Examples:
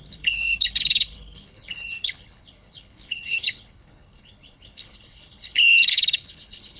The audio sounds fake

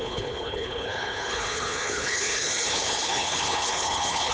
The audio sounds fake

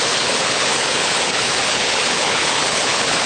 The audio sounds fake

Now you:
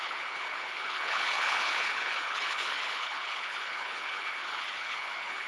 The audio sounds fake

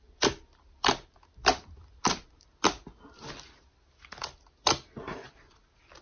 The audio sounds real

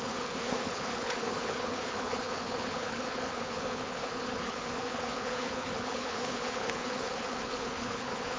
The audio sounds fake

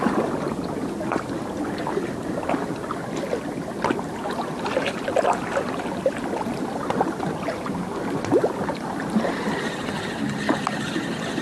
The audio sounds real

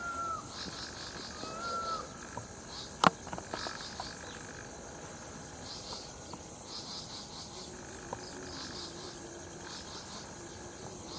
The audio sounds real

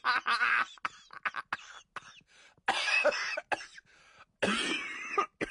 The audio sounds real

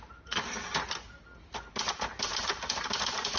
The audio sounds real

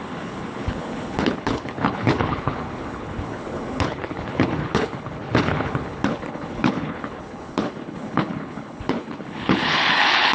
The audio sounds fake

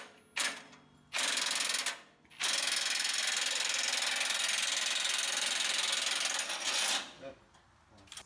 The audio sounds real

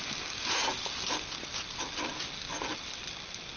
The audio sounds real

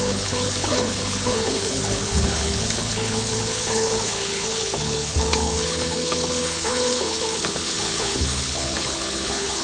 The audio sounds fake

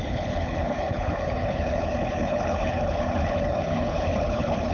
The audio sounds fake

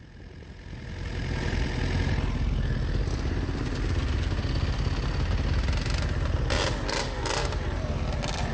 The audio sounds real